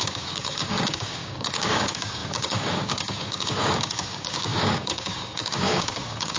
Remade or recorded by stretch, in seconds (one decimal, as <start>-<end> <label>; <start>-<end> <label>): 0.0-6.4 remade